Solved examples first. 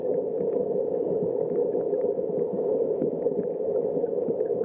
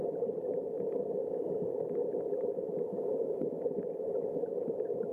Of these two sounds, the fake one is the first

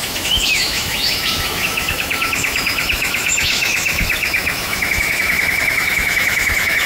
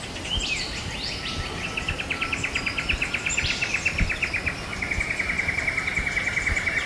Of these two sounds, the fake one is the first